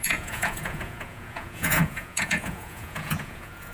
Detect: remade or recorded remade